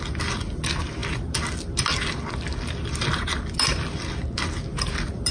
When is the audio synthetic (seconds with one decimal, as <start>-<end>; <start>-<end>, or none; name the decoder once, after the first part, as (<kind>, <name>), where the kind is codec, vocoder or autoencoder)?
none